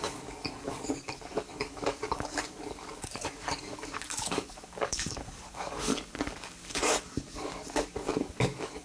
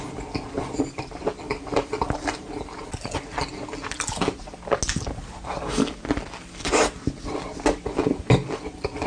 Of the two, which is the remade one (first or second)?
first